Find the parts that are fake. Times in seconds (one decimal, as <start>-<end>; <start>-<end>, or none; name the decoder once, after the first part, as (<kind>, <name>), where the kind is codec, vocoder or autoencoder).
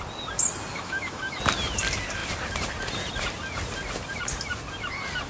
0.7-1.4 (autoencoder, DAC-VAE)